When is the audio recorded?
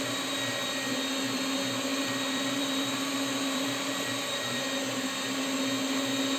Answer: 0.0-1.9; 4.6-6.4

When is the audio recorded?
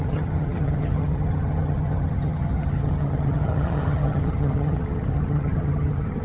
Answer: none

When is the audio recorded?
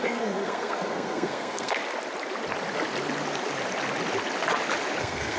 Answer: 1.8-5.0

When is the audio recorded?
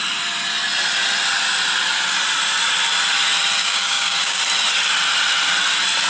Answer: 0.0-3.6; 4.4-6.1